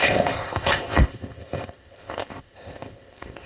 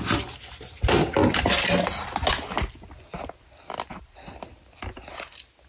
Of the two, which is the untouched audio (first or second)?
second